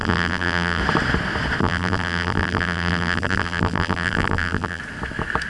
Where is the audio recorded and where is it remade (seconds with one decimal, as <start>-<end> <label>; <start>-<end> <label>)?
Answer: 0.0-0.8 remade; 0.8-1.6 recorded; 1.6-4.8 remade; 4.8-5.5 recorded